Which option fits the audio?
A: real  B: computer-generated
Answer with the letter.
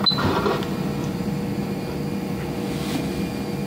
A